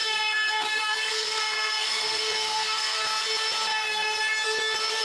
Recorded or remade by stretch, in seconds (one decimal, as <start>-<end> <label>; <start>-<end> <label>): 0.0-3.0 remade; 3.0-3.7 recorded; 3.7-4.2 remade; 4.2-5.0 recorded